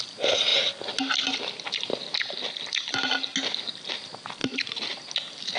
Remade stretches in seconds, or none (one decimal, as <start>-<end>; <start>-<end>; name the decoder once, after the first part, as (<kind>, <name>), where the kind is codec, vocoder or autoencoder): none